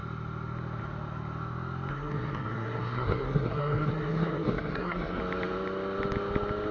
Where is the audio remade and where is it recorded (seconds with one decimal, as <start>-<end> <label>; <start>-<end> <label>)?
0.0-1.9 recorded; 1.9-5.2 remade; 5.2-6.7 recorded